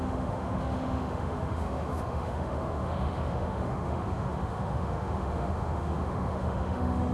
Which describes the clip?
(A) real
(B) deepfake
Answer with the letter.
B